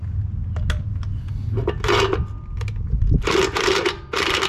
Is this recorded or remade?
recorded